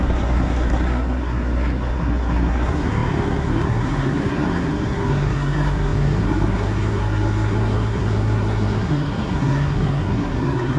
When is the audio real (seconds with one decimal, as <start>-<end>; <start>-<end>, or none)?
none